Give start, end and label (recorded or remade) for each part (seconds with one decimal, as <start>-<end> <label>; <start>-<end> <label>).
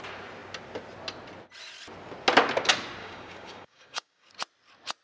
0.0-3.0 recorded; 3.0-4.3 remade; 4.3-5.0 recorded